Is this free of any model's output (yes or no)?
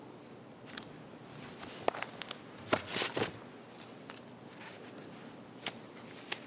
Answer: yes